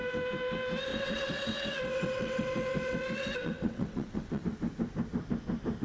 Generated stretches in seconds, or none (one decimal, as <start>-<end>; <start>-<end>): 0.9-4.4

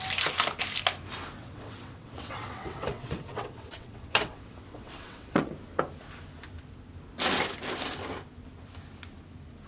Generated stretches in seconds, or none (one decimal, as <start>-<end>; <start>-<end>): 1.4-5.5